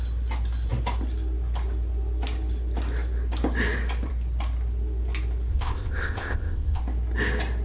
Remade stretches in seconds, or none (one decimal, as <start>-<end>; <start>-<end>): 5.5-6.8